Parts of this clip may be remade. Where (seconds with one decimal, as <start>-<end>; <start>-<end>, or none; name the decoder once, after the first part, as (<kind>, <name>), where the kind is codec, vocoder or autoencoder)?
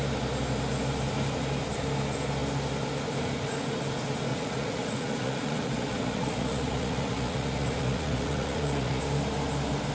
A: 4.3-9.0 (vocoder, Vocos)